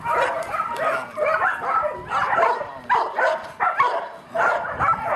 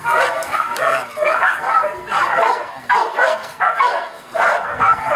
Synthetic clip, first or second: second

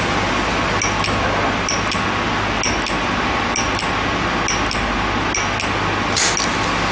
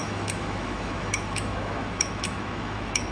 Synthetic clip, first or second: second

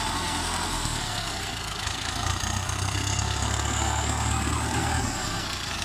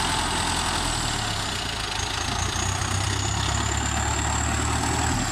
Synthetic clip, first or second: first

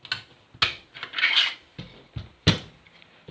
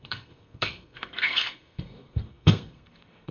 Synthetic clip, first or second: second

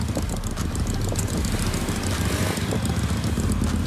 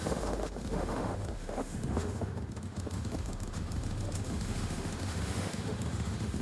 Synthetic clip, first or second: second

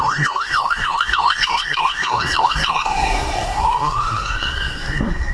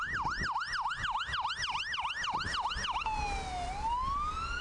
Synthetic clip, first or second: first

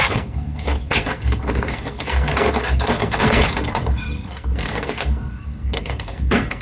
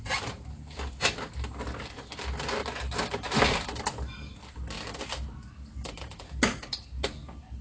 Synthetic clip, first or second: first